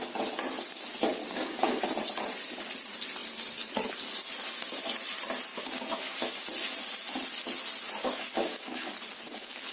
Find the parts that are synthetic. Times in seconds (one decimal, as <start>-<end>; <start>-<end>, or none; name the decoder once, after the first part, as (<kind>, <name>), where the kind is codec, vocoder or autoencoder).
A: 1.2-1.8 (codec, DAC); 5.5-6.4; 8.0-8.9